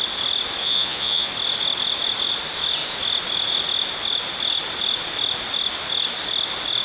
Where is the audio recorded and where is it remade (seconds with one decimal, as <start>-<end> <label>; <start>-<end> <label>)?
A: 0.0-0.6 recorded; 0.6-1.3 remade; 1.3-6.8 recorded